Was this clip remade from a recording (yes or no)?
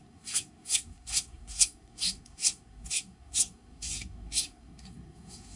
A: yes